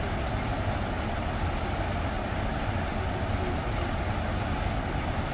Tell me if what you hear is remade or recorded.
recorded